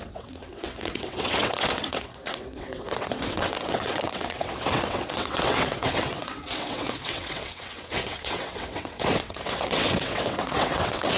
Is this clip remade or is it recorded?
remade